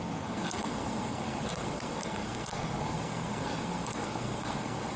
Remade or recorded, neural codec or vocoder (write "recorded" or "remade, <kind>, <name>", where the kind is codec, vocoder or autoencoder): remade, codec, SNAC